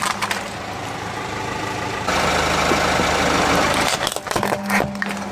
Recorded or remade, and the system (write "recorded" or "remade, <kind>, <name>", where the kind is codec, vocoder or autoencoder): recorded